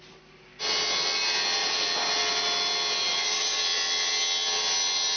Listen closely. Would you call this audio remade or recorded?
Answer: recorded